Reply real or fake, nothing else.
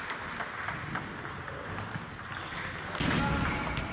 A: real